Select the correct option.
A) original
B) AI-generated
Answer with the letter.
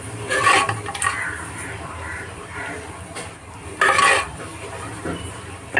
B